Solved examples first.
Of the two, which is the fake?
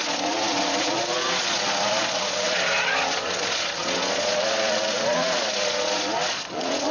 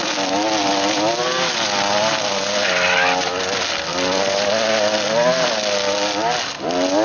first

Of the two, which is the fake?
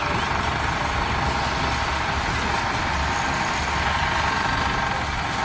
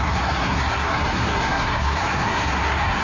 second